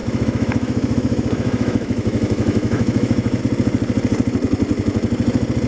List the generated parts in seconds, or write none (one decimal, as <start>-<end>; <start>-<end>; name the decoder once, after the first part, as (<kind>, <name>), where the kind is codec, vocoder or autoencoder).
0.0-3.4 (autoencoder, DAC-VAE)